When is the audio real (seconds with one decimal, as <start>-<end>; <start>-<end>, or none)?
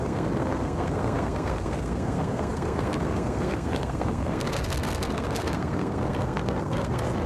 none